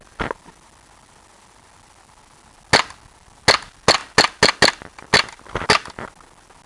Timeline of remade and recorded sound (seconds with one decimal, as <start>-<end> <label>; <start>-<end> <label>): 0.0-6.7 recorded